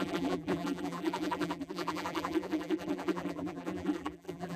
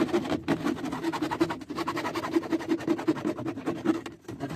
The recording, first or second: second